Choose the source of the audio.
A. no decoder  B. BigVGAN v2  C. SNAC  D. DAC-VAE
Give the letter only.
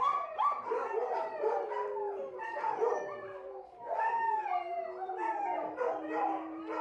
B